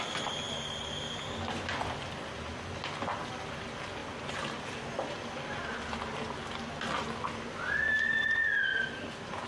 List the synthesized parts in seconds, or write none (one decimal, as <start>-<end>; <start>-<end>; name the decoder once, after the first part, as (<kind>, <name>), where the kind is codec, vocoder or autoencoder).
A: none